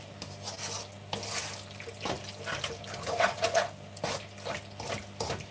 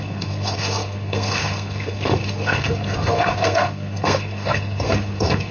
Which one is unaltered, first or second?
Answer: first